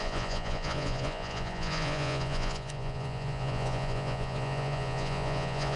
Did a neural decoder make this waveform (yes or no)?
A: yes